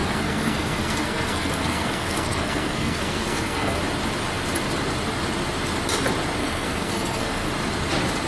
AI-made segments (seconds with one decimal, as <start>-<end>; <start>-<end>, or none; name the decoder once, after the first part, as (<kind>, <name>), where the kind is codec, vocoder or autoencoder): 0.0-3.8 (codec, SNAC); 6.4-7.5